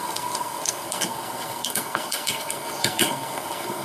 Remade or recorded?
remade